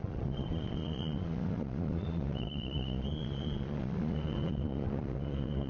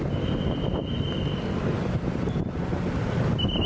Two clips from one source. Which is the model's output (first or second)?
first